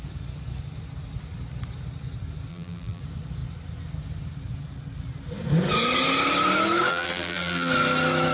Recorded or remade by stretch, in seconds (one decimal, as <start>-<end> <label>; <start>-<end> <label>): 0.0-2.5 recorded; 2.5-3.0 remade; 3.0-6.9 recorded; 6.9-7.7 remade; 7.7-8.3 recorded